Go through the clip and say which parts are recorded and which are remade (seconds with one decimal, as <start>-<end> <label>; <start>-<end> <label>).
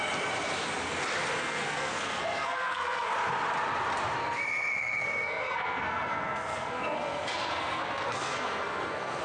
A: 0.0-1.4 recorded; 1.4-3.1 remade; 3.1-4.2 recorded; 4.2-9.2 remade